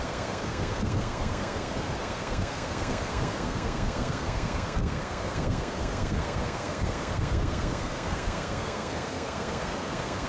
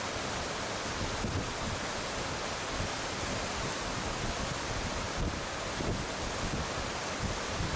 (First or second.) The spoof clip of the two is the first